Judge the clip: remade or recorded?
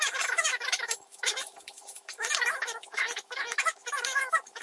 remade